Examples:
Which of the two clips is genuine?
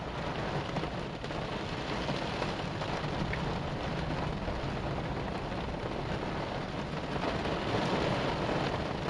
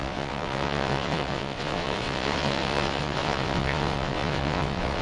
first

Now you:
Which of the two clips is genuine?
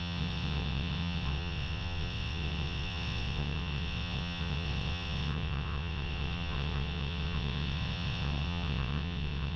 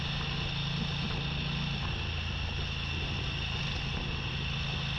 second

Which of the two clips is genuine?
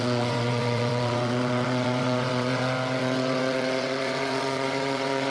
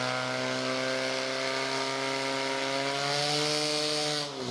second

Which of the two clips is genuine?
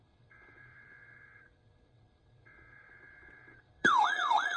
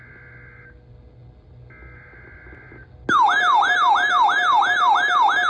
second